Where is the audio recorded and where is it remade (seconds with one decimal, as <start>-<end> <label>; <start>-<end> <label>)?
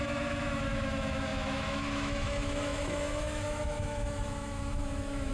0.0-5.3 remade